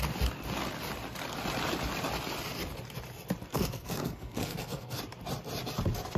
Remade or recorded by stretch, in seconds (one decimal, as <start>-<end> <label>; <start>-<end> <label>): 0.0-3.5 recorded; 3.5-5.0 remade; 5.0-6.2 recorded